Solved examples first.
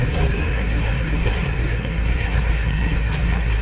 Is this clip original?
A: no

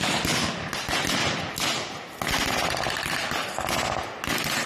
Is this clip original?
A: yes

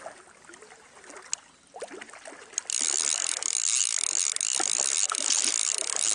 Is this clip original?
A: yes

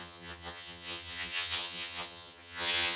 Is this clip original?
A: no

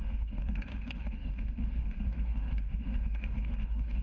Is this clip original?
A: no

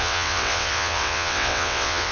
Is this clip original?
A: no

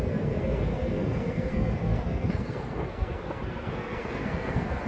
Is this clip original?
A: no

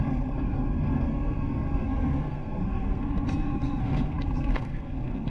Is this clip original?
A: no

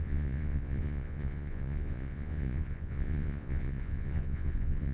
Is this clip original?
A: no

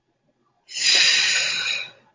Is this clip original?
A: no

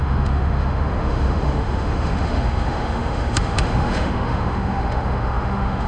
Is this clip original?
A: no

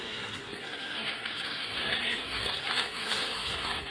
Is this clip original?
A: no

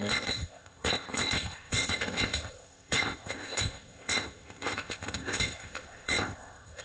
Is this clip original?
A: no